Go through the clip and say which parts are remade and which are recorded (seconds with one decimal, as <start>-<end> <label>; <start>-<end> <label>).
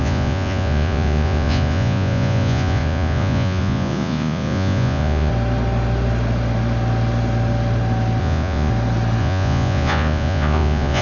0.0-5.3 remade; 5.3-8.2 recorded; 8.2-8.7 remade; 8.7-9.2 recorded; 9.2-11.0 remade